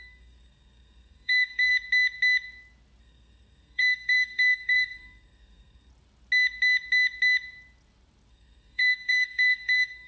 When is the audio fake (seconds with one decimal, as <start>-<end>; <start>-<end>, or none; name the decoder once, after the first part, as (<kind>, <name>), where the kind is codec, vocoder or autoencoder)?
0.0-1.7 (codec, SNAC); 3.0-5.9; 8.3-10.1